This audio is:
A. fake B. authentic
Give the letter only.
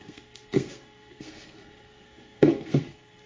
A